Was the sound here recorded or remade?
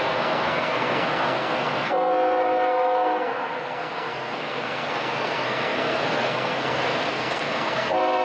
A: remade